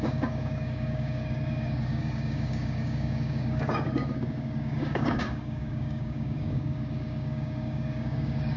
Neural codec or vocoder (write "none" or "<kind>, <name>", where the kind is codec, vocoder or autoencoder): codec, DAC